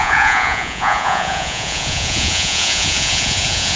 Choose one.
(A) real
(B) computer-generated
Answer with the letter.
B